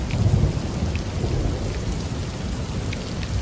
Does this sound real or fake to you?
real